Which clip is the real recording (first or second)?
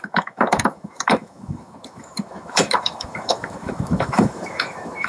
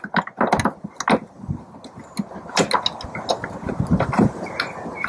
second